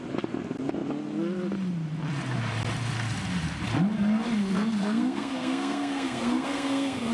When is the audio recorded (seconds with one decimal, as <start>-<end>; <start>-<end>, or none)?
0.0-4.5